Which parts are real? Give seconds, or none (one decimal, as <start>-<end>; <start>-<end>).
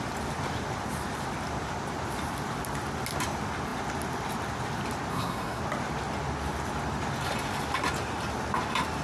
0.0-5.1; 5.6-9.0